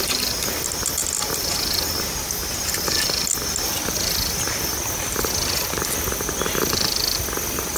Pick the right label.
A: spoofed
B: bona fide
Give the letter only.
B